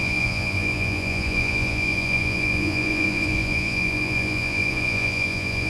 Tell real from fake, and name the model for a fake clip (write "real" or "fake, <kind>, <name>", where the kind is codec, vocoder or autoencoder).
fake, vocoder, Vocos